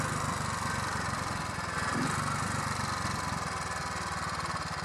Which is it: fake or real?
real